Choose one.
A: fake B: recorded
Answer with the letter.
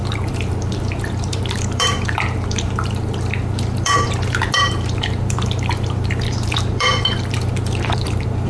A